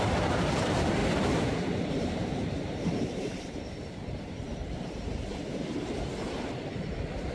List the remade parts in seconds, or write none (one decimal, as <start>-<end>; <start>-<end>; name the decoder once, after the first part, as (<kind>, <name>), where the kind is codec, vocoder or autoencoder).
0.0-1.0 (vocoder, BigVGAN v2); 1.9-7.3